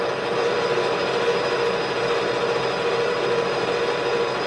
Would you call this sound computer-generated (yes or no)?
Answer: no